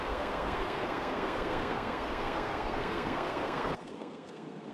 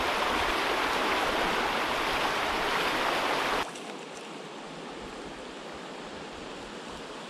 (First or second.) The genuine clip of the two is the second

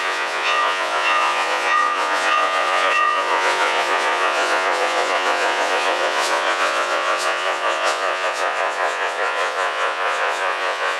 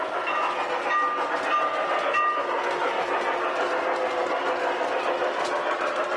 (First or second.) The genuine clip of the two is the second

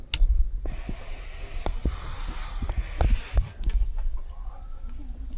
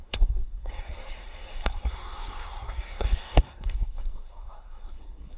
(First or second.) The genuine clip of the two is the first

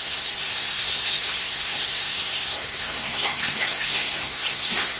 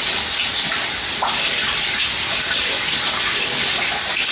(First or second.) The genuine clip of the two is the second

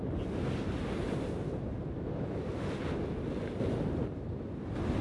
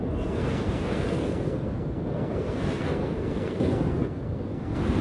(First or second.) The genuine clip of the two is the first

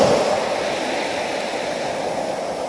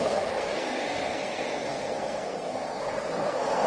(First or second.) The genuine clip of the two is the first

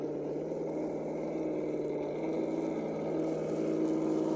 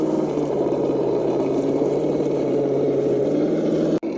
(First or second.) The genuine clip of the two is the first